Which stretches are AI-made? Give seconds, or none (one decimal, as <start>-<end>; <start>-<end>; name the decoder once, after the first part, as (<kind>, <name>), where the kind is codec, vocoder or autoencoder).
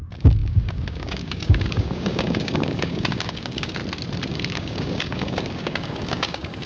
0.0-3.8 (codec, DAC); 4.3-6.7